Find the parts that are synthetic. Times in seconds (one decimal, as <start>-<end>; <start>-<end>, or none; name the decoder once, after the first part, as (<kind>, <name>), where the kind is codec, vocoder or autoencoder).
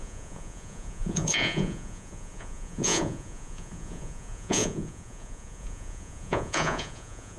0.0-7.4 (vocoder, Vocos)